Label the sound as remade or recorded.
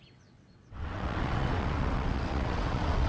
remade